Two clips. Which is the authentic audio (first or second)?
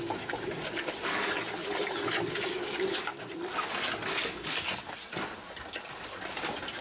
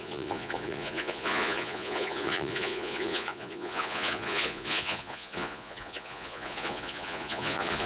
first